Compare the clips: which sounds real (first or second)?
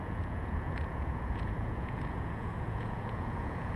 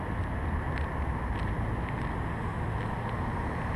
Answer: second